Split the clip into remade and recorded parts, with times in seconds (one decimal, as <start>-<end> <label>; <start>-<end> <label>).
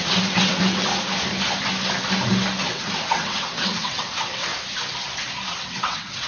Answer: 0.0-0.9 remade; 0.9-2.6 recorded; 2.6-4.5 remade; 4.5-5.5 recorded; 5.5-6.3 remade